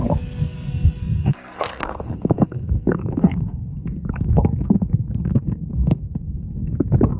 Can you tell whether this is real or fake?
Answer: fake